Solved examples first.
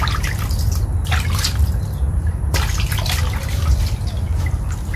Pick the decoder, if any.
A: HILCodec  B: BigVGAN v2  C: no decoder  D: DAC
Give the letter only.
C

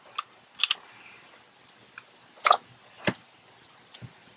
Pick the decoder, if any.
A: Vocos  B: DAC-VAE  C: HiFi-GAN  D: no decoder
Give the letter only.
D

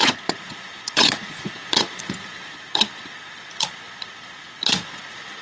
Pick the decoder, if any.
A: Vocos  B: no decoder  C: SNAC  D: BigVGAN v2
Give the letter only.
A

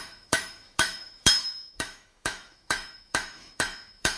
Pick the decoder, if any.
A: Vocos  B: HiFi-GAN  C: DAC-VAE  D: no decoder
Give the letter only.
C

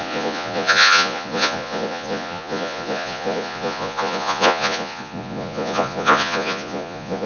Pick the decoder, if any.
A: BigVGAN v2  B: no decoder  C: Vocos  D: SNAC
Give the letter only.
C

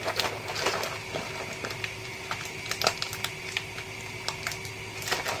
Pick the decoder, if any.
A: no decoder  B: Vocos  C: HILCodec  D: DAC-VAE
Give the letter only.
A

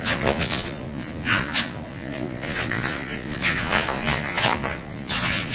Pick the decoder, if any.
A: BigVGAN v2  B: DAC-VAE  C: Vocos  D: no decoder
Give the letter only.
C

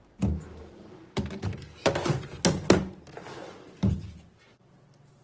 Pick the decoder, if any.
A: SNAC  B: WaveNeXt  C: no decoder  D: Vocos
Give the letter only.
C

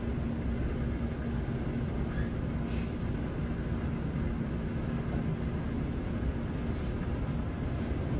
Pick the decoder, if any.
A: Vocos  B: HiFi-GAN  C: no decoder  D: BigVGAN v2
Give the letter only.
C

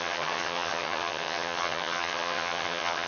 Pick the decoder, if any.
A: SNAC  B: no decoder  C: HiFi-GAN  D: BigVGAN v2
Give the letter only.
C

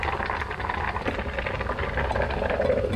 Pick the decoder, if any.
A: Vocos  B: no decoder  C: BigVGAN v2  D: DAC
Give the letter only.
B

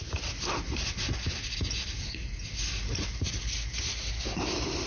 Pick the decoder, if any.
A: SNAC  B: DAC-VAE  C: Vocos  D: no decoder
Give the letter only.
D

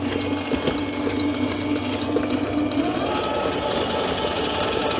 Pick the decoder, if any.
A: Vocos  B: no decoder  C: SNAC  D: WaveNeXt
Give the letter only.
B